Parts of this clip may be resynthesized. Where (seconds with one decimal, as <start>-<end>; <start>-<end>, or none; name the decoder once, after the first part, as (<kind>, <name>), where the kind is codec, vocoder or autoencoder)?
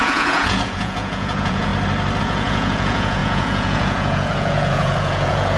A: 0.0-1.7 (vocoder, Vocos); 2.2-5.6